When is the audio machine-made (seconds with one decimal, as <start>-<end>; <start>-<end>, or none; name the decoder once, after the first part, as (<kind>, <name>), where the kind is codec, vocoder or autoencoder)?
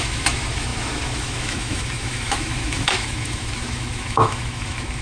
0.0-5.0 (autoencoder, DAC-VAE)